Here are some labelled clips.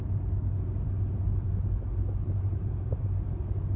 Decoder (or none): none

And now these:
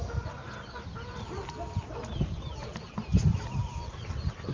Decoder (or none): none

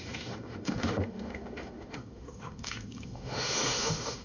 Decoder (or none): autoencoder, DAC-VAE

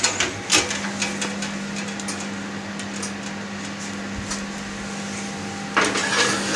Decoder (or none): none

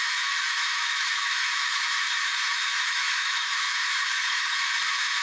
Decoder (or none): autoencoder, DAC-VAE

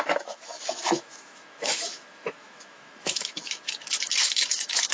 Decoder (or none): autoencoder, DAC-VAE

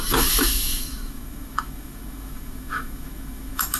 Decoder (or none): autoencoder, DAC-VAE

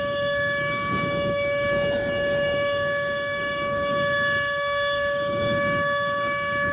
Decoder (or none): autoencoder, DAC-VAE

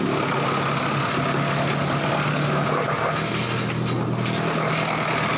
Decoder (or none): none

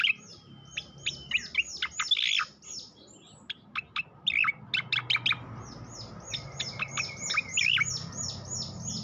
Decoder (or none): none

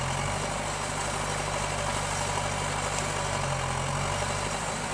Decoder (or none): none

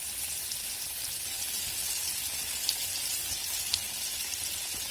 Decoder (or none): none